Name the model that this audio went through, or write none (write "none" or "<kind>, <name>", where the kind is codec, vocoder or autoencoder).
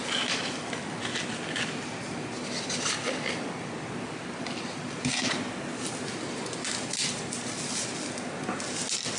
none